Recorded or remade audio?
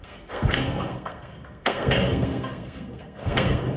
remade